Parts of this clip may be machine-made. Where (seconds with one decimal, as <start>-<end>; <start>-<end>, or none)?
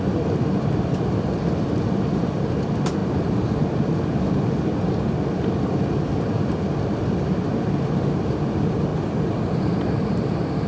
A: 0.0-10.7